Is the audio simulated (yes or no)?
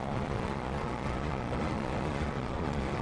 yes